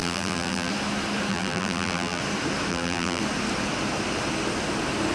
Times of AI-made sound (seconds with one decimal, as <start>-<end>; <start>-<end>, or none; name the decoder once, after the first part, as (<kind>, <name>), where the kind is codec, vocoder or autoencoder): 0.0-0.7 (vocoder, BigVGAN v2); 1.3-2.2; 2.7-3.2